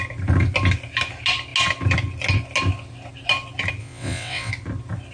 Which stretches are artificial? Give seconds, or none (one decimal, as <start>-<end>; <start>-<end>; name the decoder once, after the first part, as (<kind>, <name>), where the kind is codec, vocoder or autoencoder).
3.8-4.5 (vocoder, WaveNeXt)